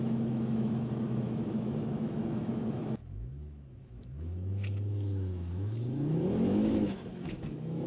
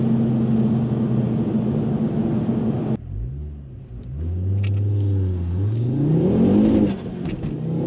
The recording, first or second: second